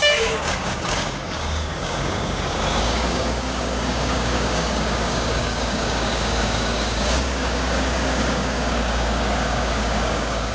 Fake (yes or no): yes